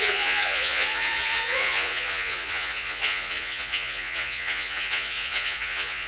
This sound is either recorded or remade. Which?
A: remade